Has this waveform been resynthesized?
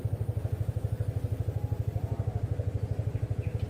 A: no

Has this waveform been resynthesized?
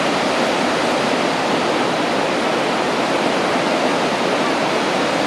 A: no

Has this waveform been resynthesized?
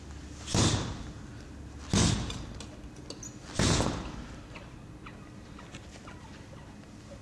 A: no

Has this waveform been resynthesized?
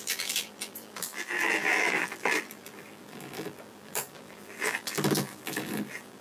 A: yes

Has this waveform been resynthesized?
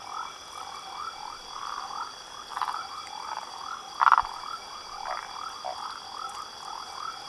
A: no